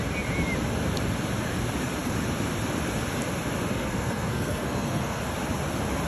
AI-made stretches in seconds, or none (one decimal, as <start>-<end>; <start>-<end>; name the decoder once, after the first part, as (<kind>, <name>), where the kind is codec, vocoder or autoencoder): 3.7-5.2 (codec, SNAC)

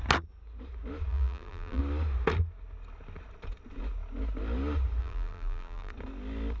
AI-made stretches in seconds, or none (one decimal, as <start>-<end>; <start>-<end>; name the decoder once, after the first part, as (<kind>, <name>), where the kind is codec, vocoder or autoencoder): 1.1-1.8 (vocoder, BigVGAN v2); 5.0-5.9

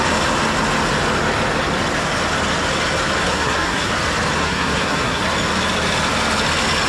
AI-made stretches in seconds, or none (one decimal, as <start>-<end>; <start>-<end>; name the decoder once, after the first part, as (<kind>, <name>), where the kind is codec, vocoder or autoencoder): 3.2-3.9 (codec, SNAC); 4.4-5.2

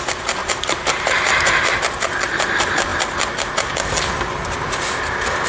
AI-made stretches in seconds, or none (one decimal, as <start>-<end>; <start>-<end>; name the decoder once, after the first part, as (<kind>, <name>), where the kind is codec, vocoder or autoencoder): 0.4-1.8 (vocoder, BigVGAN v2)

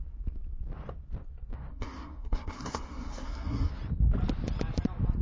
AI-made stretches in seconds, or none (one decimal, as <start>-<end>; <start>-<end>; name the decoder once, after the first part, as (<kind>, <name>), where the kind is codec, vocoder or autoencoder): 1.7-3.7 (codec, SNAC)

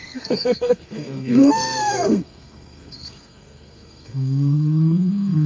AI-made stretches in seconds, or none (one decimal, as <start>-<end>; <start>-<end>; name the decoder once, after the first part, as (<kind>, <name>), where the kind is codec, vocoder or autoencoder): 0.0-5.5 (codec, SNAC)

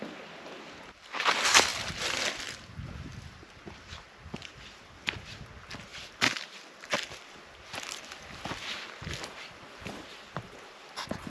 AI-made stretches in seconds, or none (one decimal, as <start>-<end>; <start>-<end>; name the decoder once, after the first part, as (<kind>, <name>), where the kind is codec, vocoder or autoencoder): 1.7-2.7 (vocoder, BigVGAN v2); 3.1-5.1; 5.9-7.4